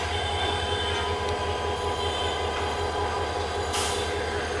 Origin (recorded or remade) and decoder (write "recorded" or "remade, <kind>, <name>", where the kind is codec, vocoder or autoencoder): recorded